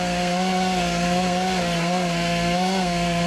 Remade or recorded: remade